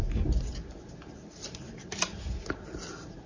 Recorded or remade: recorded